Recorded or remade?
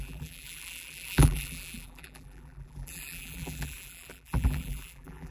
remade